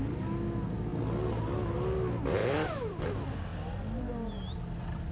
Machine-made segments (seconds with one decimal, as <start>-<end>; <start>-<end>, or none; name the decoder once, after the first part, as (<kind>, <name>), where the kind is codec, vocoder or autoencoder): 2.4-3.0 (vocoder, BigVGAN v2)